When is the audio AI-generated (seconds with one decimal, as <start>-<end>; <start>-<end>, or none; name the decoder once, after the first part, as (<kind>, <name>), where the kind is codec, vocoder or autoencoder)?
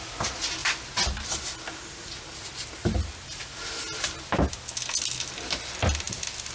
none